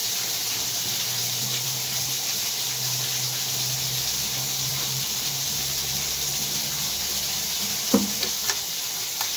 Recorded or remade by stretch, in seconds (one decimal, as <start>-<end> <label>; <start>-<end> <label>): 0.0-2.6 remade; 2.6-4.7 recorded; 4.7-6.1 remade; 6.1-9.4 recorded